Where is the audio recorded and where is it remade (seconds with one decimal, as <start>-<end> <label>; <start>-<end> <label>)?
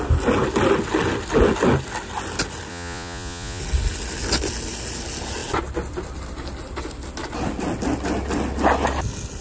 0.0-2.7 recorded; 2.7-3.6 remade; 3.6-9.4 recorded